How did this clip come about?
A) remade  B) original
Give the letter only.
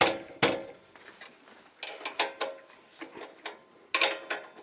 B